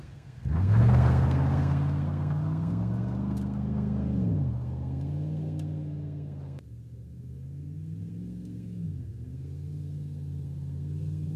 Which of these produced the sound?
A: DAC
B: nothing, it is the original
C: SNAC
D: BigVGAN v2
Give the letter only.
C